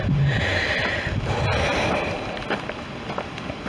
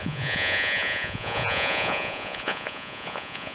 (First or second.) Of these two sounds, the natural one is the first